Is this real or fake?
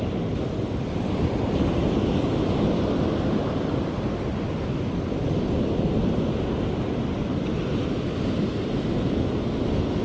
real